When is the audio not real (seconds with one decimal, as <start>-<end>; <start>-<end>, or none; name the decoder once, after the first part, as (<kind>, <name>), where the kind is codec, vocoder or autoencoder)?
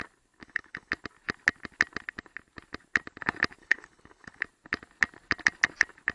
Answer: 0.4-0.9 (codec, HILCodec); 3.6-4.4